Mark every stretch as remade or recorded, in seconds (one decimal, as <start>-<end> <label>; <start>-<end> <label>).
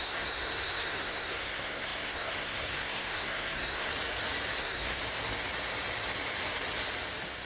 0.0-3.9 remade; 3.9-4.6 recorded; 4.6-5.0 remade; 5.0-7.4 recorded